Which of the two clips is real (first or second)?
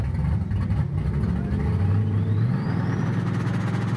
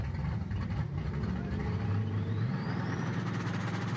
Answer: first